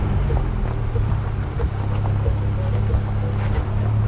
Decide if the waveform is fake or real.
real